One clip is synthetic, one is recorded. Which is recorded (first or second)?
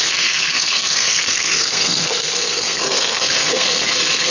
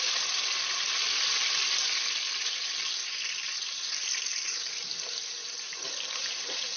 second